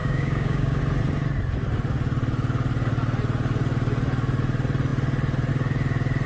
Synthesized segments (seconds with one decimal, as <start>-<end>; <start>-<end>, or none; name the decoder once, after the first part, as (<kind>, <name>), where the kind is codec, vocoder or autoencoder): 0.0-0.8 (codec, DAC)